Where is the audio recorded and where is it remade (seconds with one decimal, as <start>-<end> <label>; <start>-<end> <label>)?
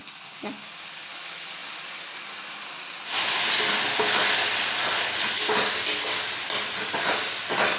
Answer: 0.0-7.8 recorded